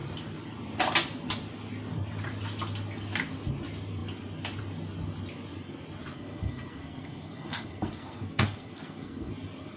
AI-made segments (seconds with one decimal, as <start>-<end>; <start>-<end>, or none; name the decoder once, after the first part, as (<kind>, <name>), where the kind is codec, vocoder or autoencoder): 6.1-9.3 (codec, SNAC)